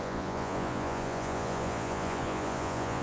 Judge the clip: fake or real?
fake